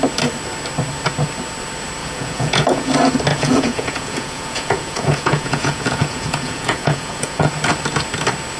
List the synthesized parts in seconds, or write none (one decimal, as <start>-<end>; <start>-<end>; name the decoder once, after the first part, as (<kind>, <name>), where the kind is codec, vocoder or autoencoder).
2.0-2.9 (vocoder, Vocos); 3.3-7.5